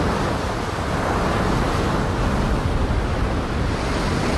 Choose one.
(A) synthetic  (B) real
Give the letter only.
B